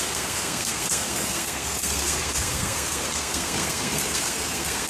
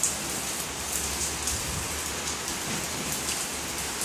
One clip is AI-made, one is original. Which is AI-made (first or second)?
first